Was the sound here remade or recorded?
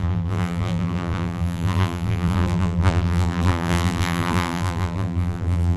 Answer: remade